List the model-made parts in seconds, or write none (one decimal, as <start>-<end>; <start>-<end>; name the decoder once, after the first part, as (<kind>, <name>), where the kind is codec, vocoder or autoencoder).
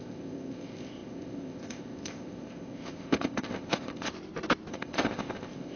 0.0-4.1 (codec, ZipCodec); 4.7-5.8